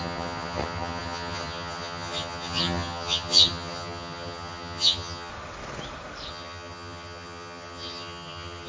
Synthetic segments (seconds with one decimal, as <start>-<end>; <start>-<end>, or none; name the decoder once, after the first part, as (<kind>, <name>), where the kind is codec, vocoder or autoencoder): 0.0-5.3 (vocoder, HiFi-GAN); 6.3-8.7